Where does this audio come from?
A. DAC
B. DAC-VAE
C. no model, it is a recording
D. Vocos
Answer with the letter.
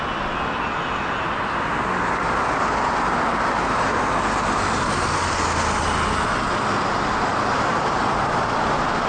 C